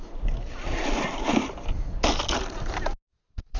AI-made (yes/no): no